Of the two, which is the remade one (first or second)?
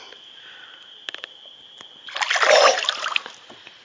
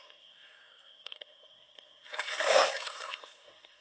second